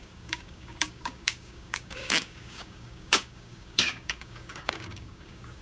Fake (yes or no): yes